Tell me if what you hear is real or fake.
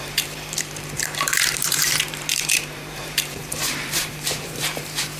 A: fake